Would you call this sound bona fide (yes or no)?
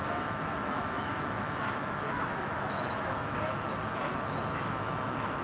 no